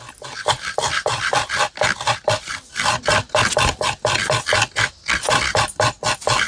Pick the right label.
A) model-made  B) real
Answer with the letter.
B